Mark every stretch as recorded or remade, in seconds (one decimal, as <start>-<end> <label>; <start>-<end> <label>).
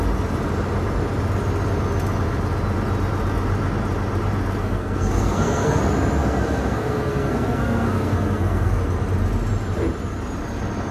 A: 0.0-4.6 recorded; 4.6-5.8 remade; 5.8-6.2 recorded; 6.2-8.8 remade; 8.8-10.9 recorded